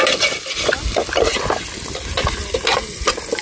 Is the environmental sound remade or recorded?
recorded